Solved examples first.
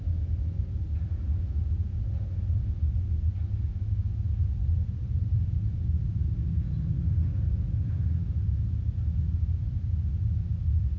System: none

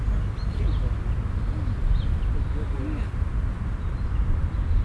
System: none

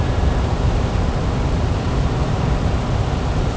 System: none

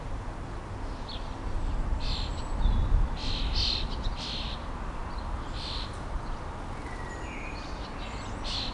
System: none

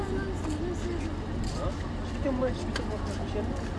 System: none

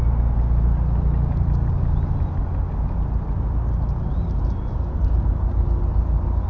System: none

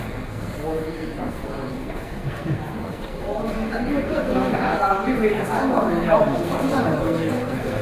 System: codec, SNAC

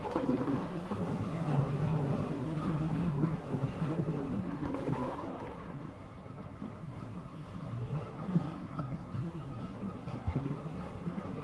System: codec, SNAC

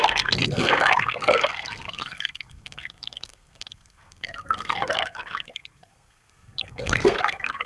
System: codec, SNAC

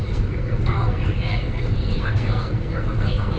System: codec, SNAC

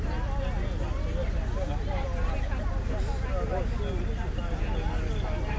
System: none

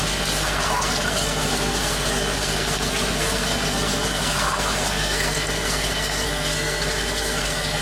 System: codec, SNAC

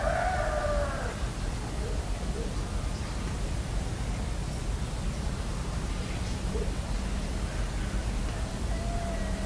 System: none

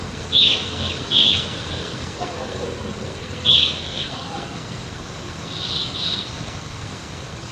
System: codec, SNAC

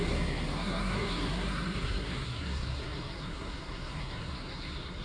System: codec, SNAC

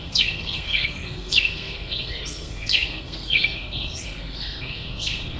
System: codec, SNAC